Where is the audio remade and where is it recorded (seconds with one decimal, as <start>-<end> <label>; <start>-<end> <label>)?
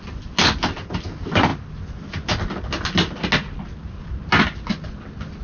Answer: 0.0-5.4 recorded